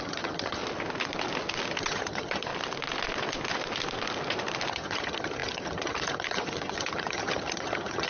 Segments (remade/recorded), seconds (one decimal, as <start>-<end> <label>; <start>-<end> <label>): 0.0-0.6 remade; 0.6-1.8 recorded; 1.8-2.5 remade; 2.5-4.7 recorded; 4.7-8.1 remade

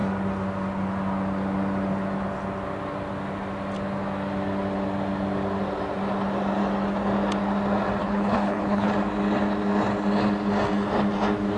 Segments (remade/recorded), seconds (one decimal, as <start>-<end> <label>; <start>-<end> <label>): 0.0-8.0 recorded; 8.0-8.9 remade; 8.9-11.6 recorded

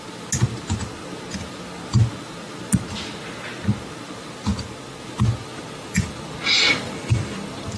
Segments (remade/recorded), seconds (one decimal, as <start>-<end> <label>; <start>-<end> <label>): 0.0-5.4 recorded; 5.4-7.8 remade